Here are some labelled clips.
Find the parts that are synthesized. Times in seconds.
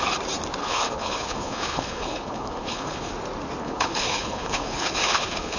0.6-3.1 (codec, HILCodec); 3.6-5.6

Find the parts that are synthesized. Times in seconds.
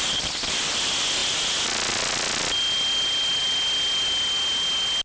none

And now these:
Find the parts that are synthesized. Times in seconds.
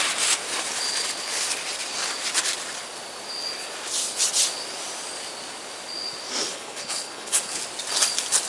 6.5-7.6 (codec, HILCodec)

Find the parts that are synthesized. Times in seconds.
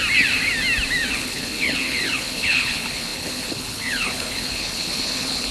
1.1-5.5 (codec, HILCodec)